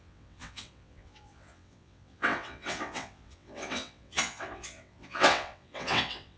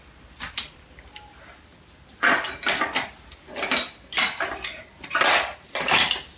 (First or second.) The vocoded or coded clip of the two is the first